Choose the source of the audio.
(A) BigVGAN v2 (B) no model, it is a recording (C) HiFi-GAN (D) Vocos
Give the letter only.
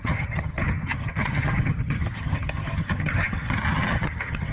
C